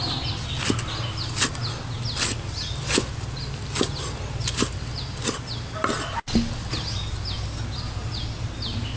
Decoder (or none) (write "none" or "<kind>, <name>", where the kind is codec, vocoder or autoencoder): none